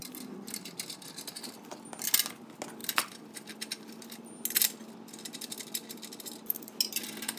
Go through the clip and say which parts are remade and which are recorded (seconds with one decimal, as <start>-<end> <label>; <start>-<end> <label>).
0.0-2.8 recorded; 2.8-3.8 remade; 3.8-7.4 recorded